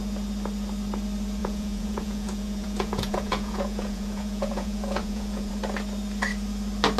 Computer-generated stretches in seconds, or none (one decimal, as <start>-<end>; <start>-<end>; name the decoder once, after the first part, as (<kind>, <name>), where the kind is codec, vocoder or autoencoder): 1.4-5.5 (vocoder, Vocos)